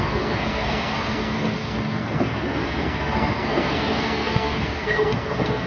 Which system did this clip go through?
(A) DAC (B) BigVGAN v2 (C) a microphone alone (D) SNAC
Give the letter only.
D